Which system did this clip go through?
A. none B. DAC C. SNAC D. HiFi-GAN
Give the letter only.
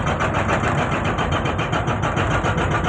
A